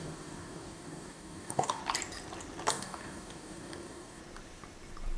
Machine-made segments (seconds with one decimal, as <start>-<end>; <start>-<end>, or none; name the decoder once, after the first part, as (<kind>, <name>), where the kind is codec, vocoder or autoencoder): 0.0-1.8 (codec, DAC); 2.7-4.2